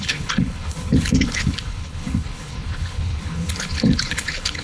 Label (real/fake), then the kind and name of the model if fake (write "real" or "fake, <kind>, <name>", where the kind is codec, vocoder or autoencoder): fake, codec, HILCodec